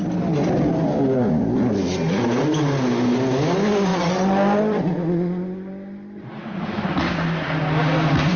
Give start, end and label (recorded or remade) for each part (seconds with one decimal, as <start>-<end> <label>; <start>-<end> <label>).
0.0-8.4 recorded